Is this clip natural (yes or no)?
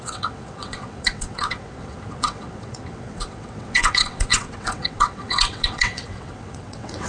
no